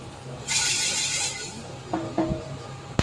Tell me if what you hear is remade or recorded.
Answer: remade